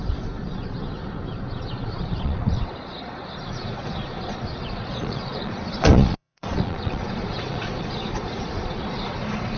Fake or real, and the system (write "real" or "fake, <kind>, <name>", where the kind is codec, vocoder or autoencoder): fake, vocoder, Vocos